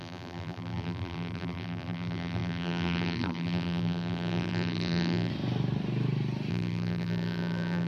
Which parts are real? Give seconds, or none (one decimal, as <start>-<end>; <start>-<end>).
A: 5.3-6.5